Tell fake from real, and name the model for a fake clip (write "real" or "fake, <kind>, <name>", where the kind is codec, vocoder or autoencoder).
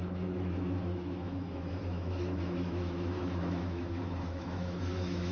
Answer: fake, autoencoder, DAC-VAE